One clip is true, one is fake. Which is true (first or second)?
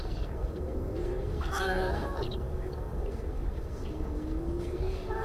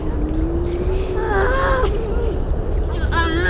second